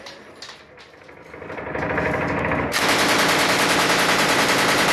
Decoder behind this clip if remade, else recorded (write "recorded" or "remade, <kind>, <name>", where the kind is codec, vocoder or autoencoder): recorded